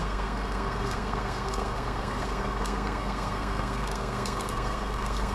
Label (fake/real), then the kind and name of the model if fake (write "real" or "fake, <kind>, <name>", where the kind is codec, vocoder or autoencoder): fake, codec, SNAC